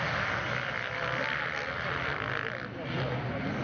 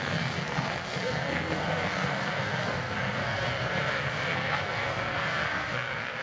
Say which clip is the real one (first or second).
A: first